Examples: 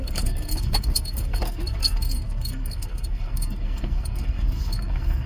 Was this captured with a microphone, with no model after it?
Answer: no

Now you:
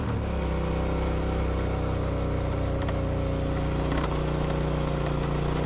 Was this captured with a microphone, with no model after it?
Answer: yes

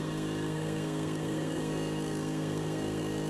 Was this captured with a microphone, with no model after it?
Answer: no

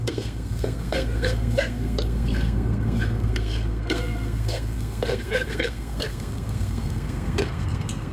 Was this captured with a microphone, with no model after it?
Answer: no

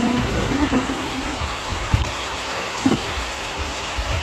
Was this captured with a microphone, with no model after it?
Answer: no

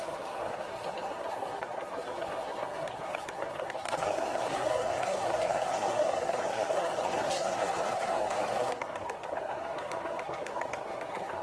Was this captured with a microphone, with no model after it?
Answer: no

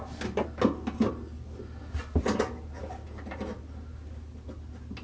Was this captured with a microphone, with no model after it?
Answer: yes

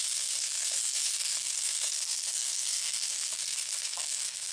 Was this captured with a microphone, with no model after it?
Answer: no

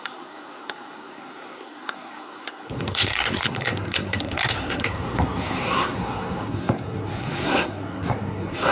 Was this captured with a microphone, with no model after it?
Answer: no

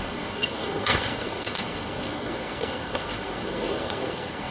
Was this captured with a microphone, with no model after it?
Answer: no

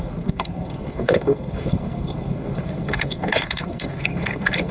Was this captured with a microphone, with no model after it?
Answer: no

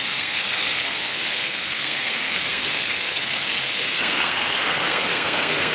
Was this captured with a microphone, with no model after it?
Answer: no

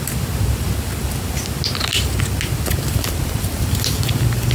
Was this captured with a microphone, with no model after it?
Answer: yes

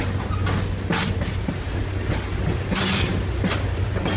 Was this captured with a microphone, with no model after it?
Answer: yes